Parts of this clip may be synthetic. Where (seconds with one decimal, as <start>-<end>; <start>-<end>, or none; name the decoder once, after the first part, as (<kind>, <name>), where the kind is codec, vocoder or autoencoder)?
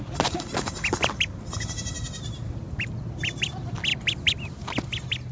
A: none